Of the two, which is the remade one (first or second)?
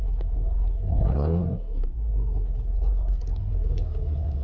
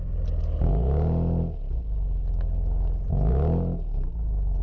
first